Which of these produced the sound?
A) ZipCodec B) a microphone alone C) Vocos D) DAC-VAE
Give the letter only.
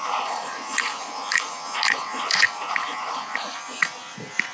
C